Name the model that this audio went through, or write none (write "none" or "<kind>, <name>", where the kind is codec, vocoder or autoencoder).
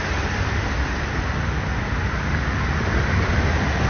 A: none